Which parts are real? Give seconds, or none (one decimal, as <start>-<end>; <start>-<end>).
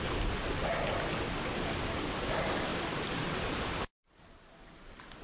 0.0-2.7; 4.1-5.2